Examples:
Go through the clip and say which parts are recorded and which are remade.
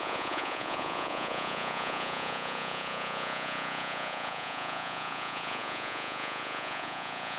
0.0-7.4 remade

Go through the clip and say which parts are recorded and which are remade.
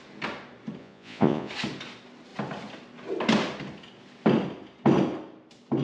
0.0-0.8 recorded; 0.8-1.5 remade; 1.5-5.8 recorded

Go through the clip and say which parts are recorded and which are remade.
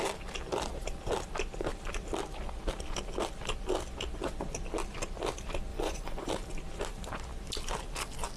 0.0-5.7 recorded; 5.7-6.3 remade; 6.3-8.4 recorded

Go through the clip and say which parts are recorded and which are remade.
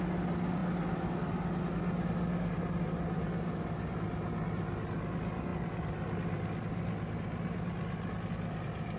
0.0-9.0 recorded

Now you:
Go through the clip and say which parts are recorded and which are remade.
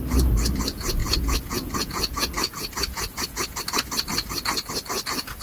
0.0-1.0 recorded; 1.0-3.6 remade; 3.6-5.4 recorded